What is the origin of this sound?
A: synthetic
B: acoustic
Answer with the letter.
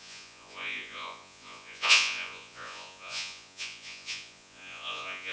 A